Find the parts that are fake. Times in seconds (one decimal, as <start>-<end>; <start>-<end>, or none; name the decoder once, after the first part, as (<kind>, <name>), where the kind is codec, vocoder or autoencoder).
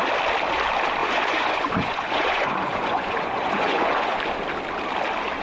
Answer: 1.0-4.2 (vocoder, Vocos)